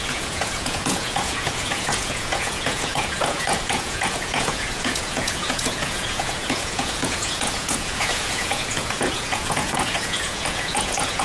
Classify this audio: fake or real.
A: fake